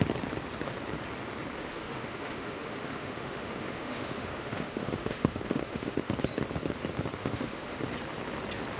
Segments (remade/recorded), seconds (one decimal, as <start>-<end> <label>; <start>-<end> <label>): 0.0-1.6 recorded; 1.6-6.0 remade; 6.0-7.2 recorded; 7.2-7.8 remade; 7.8-8.8 recorded